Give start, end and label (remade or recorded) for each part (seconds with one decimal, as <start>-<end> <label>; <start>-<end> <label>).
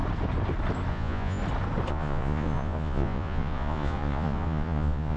0.0-0.9 recorded; 0.9-1.4 remade; 1.4-1.9 recorded; 1.9-5.2 remade